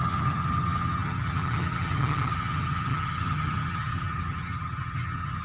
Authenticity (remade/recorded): remade